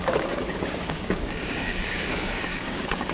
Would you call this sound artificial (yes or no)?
yes